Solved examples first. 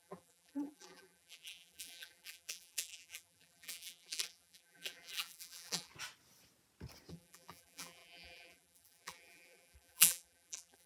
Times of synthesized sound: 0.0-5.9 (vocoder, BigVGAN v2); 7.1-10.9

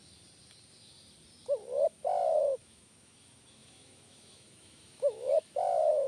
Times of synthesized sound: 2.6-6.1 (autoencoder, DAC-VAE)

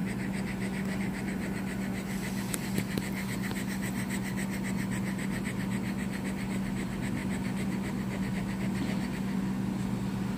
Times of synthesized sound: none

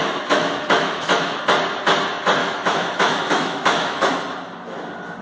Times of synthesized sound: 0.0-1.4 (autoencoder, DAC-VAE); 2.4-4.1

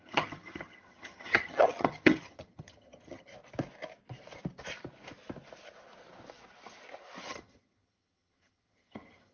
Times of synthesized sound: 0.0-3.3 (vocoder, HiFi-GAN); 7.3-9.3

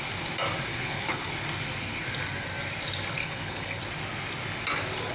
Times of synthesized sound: 0.7-1.3 (codec, HILCodec); 3.2-3.8